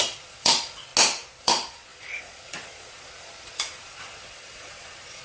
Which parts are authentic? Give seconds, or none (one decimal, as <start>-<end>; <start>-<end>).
0.9-1.4